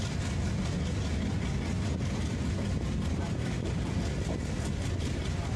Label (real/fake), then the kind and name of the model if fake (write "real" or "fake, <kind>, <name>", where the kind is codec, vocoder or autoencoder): real